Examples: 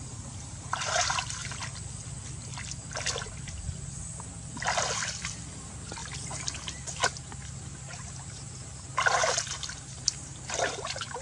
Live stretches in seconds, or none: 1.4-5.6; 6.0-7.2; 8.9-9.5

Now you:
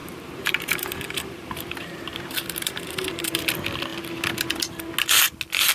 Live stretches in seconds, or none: 3.4-5.7

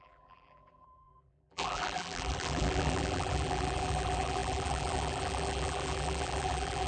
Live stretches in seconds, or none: none

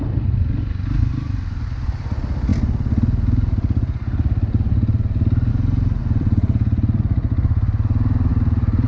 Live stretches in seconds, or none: 0.0-6.0; 7.0-8.3

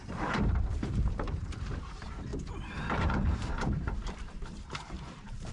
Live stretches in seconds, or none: 2.3-3.0

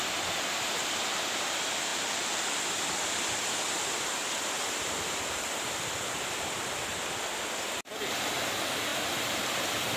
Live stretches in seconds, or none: 0.0-1.9; 6.3-6.9; 8.0-8.9; 9.4-10.0

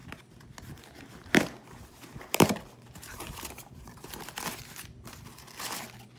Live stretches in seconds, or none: 0.0-1.6; 4.2-6.2

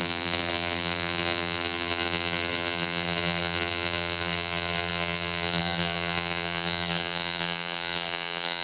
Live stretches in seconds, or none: none